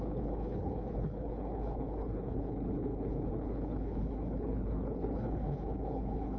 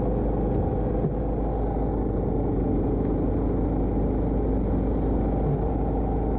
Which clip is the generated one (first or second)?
first